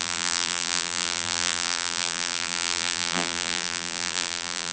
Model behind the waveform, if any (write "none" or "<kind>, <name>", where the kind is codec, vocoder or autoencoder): vocoder, BigVGAN v2